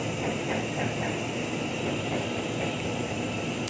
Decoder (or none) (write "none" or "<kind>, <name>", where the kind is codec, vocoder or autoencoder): none